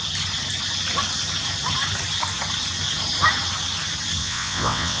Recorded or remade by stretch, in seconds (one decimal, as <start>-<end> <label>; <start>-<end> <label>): 0.0-4.2 recorded; 4.2-5.0 remade